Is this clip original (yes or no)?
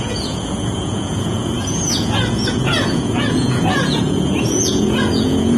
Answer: no